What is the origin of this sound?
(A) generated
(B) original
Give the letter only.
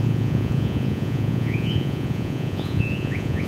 A